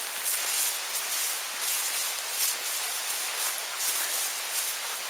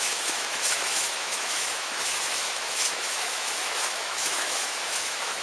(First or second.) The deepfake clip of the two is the second